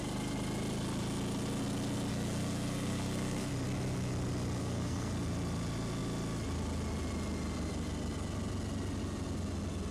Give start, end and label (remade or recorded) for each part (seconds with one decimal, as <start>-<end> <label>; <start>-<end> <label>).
0.0-2.1 recorded; 2.1-3.5 remade; 3.5-4.6 recorded; 4.6-5.1 remade; 5.1-9.9 recorded